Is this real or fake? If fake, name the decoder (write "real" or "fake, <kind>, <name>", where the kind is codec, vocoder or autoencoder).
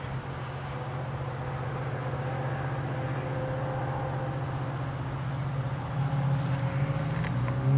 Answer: real